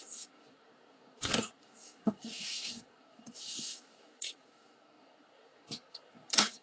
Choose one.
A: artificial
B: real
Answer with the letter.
A